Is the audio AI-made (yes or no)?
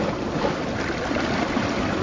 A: no